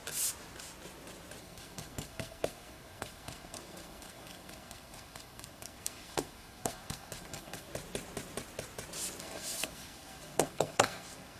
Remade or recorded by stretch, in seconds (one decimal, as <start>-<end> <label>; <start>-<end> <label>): 0.0-1.4 recorded; 1.4-7.7 remade; 7.7-9.2 recorded; 9.2-11.4 remade